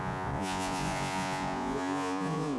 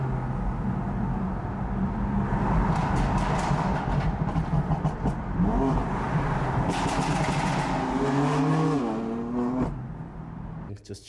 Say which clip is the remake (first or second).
first